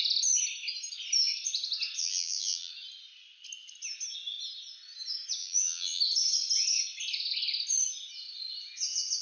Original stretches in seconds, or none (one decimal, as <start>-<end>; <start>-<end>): 0.0-2.0; 2.7-5.4; 6.0-9.2

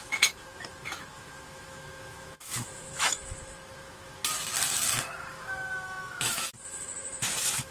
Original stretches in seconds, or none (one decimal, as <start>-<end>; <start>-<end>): 4.2-5.3

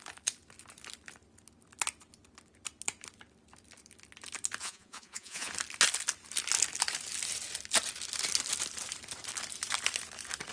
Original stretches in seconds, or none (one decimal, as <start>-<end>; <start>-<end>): 0.0-4.6; 5.5-10.5

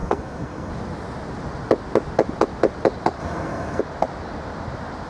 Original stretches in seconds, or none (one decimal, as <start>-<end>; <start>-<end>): 0.7-3.2; 3.8-5.1

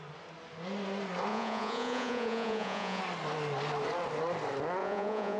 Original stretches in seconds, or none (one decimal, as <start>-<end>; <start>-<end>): 0.0-1.3; 3.0-4.8

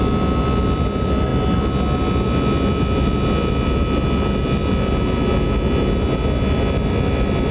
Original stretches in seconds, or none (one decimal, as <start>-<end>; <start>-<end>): 0.0-7.5

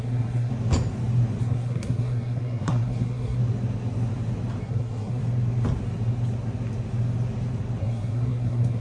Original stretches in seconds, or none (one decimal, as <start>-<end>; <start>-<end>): 0.5-1.4; 3.4-4.6; 5.2-7.8

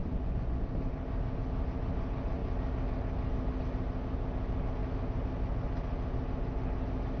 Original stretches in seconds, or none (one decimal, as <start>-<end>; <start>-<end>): 0.6-7.2